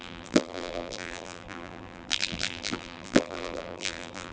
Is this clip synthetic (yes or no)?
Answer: yes